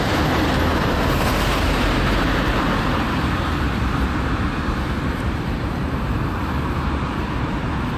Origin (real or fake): fake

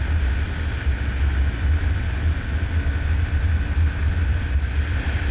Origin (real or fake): real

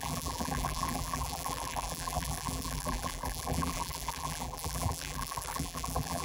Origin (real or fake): fake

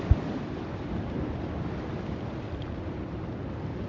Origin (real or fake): fake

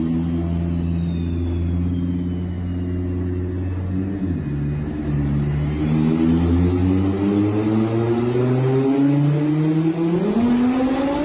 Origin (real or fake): real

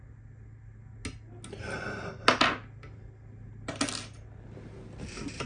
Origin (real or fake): real